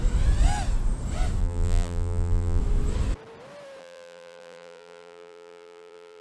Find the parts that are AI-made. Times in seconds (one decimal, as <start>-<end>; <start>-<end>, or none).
1.4-2.6; 3.8-6.2